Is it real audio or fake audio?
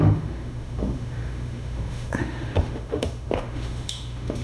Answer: fake